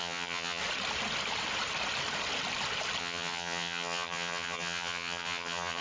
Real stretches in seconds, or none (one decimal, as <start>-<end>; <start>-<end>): 0.6-3.0